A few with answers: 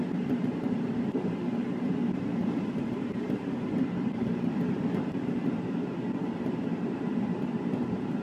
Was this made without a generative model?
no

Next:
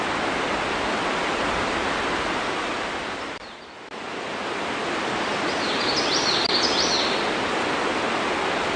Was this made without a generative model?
yes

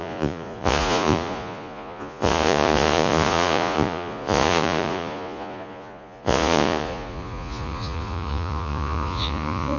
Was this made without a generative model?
no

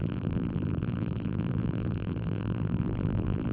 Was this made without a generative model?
no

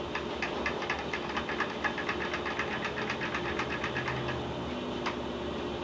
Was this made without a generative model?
yes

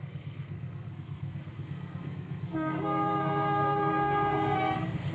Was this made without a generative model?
no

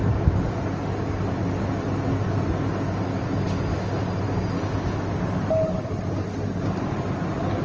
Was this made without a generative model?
yes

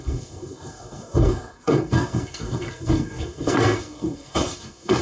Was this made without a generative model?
no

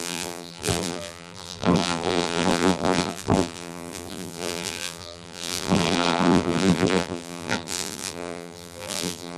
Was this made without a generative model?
no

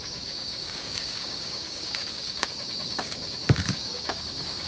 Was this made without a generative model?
no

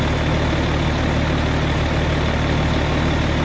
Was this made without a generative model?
yes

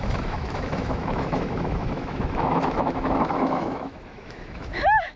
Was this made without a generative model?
no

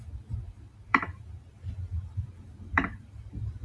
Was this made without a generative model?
no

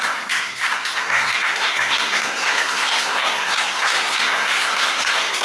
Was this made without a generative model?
no